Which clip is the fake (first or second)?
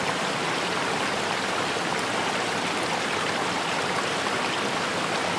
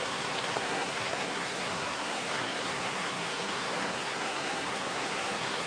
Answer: second